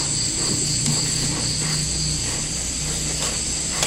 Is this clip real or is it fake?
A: real